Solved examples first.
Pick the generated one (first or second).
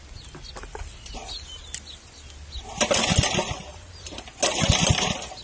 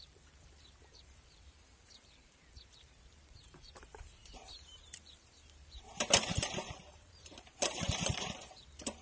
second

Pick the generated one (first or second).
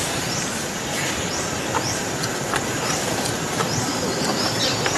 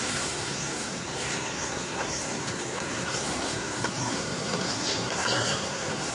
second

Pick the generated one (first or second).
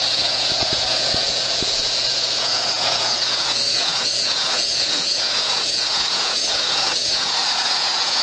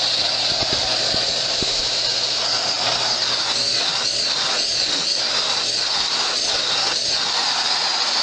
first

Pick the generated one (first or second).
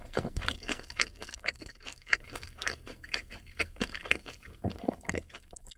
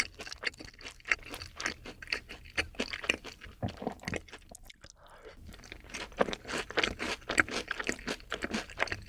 first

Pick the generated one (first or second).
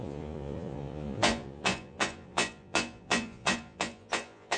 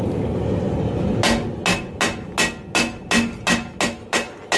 first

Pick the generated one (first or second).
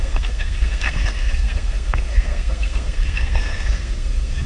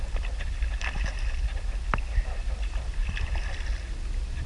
first